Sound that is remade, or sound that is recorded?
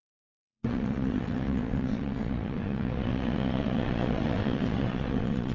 remade